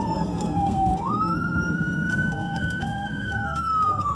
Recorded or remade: remade